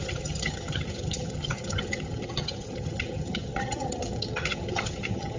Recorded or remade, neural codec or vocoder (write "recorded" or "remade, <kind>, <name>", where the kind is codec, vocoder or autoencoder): remade, vocoder, HiFi-GAN